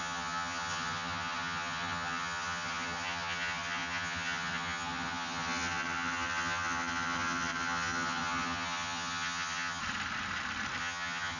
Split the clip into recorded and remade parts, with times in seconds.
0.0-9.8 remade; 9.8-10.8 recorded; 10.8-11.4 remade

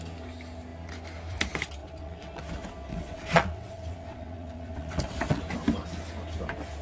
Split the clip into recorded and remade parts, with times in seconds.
0.0-1.8 recorded; 1.8-2.4 remade; 2.4-2.9 recorded; 2.9-5.4 remade; 5.4-6.8 recorded

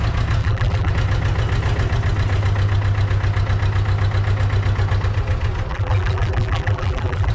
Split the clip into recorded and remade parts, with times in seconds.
0.0-0.4 recorded; 0.4-0.9 remade; 0.9-5.7 recorded; 5.7-7.3 remade

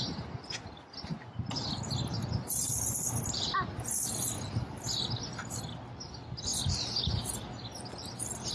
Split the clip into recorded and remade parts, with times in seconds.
0.0-8.5 recorded